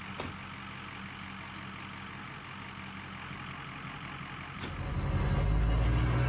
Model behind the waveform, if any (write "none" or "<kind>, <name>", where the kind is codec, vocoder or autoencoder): none